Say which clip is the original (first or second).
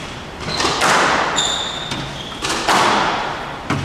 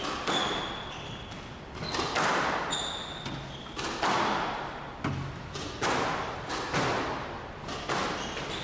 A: second